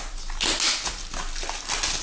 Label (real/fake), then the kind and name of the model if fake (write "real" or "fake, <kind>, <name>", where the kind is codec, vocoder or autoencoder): real